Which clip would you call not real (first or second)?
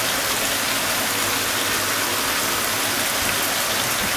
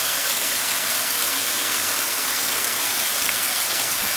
second